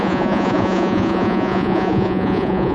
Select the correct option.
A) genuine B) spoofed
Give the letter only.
B